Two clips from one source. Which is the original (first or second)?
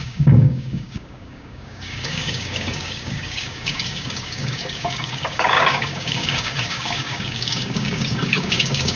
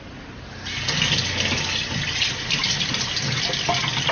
second